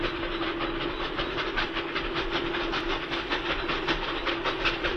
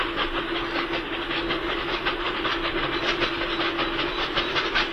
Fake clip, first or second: first